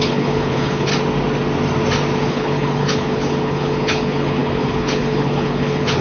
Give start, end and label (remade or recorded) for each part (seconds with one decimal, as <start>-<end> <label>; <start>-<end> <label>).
0.0-0.9 remade; 0.9-2.2 recorded; 2.2-6.0 remade